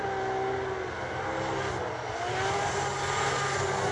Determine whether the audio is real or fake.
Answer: real